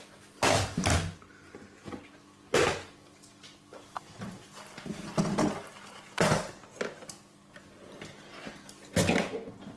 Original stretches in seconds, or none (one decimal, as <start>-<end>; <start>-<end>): 0.0-3.7; 4.4-9.8